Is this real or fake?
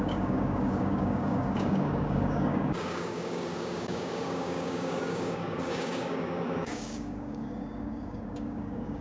fake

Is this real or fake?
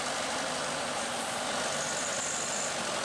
real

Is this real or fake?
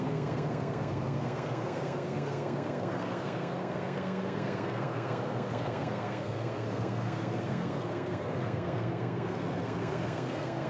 fake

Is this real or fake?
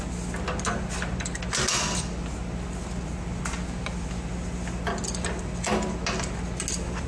real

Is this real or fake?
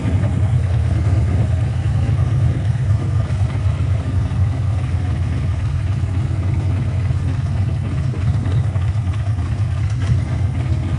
fake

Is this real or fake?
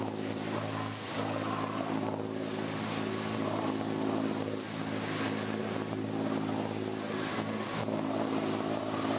real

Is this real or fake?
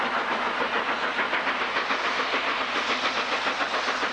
real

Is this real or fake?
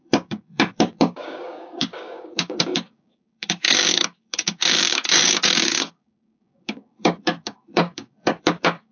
fake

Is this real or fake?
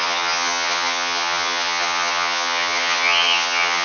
fake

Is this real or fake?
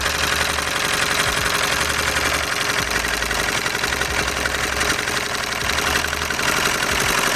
real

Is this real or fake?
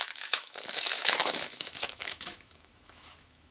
fake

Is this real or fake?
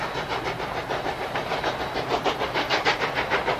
real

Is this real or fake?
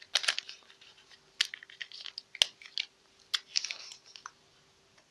real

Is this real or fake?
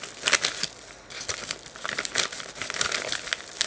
real